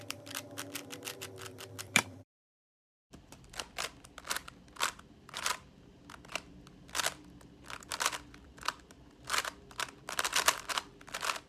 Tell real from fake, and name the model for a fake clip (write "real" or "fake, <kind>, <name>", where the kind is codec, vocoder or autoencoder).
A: fake, vocoder, BigVGAN v2